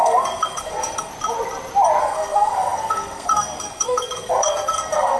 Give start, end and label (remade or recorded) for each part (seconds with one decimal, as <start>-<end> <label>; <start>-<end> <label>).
0.0-1.1 remade; 1.1-2.0 recorded; 2.0-5.2 remade